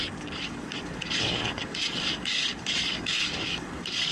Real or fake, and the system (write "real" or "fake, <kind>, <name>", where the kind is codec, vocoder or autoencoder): fake, codec, DAC